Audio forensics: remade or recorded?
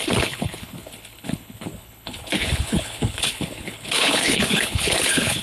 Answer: remade